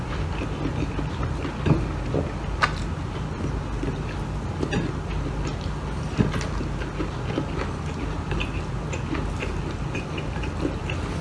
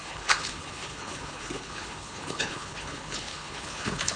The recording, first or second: first